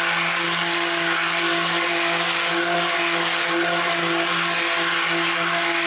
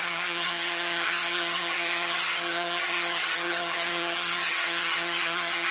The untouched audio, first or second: first